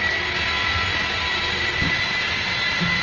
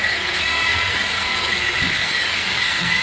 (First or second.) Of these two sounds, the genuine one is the first